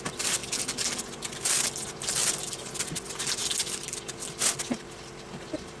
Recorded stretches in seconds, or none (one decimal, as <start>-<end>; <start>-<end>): 0.0-5.8